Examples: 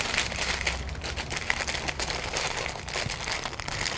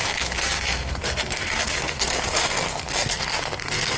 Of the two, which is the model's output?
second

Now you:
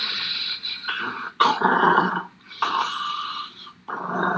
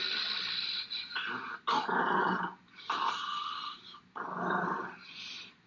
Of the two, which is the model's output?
first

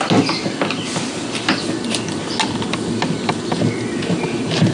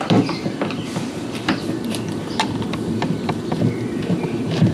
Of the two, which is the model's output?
second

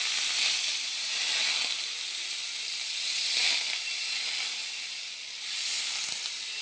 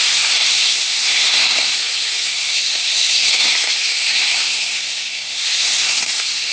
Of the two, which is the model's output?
second